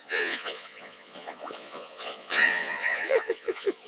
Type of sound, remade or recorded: remade